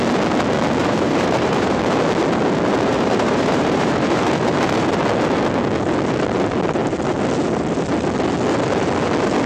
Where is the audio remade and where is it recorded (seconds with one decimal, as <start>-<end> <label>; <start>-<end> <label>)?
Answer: 0.0-0.8 recorded; 0.8-1.8 remade; 1.8-2.9 recorded; 2.9-5.0 remade; 5.0-9.5 recorded